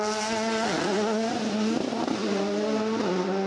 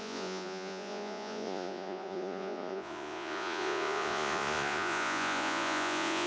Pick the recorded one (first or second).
first